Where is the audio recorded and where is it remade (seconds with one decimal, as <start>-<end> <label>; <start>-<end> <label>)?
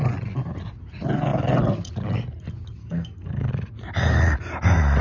0.0-2.8 recorded; 2.8-3.5 remade; 3.5-5.0 recorded